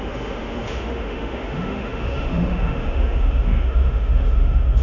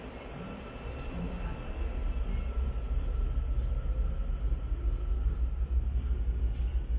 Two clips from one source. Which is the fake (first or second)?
first